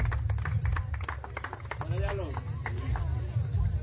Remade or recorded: recorded